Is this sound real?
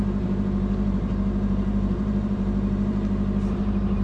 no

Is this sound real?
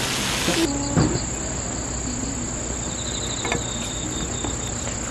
yes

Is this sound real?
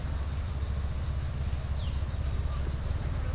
yes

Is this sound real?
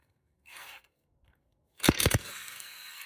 no